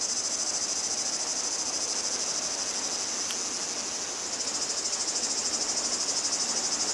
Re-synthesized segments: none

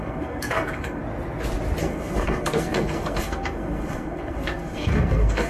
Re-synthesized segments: 0.0-1.0 (codec, SNAC); 1.8-5.5

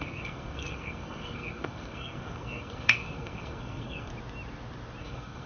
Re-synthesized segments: 0.0-4.1 (codec, SNAC); 5.0-5.5

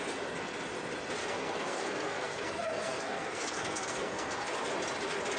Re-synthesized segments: 1.2-4.4 (codec, SNAC)

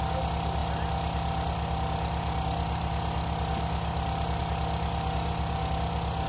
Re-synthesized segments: none

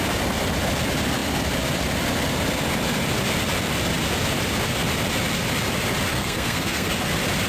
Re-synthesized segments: 6.1-6.9 (codec, SNAC)

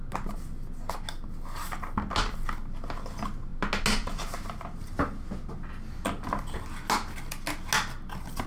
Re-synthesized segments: none

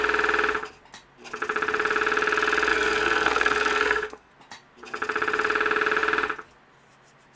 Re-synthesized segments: 2.7-4.3 (codec, SNAC)